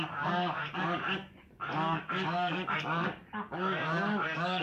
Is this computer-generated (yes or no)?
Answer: yes